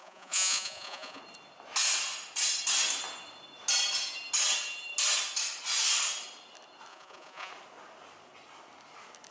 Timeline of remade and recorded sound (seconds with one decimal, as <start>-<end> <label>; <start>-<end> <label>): 0.0-1.2 remade; 1.2-6.9 recorded; 6.9-7.5 remade; 7.5-9.3 recorded